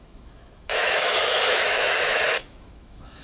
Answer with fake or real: fake